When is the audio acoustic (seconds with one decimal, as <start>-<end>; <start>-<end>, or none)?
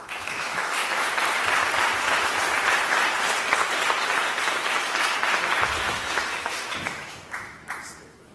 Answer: 0.8-5.8